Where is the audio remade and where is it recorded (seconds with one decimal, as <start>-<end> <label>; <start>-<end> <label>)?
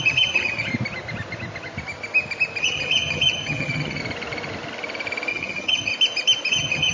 0.0-0.7 remade; 0.7-2.6 recorded; 2.6-4.0 remade; 4.0-5.3 recorded; 5.3-5.9 remade; 5.9-6.5 recorded; 6.5-6.9 remade